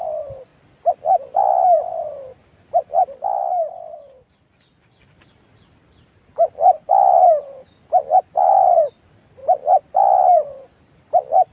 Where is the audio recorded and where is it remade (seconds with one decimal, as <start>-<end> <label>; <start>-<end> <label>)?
0.0-0.5 remade; 0.5-1.9 recorded; 1.9-11.5 remade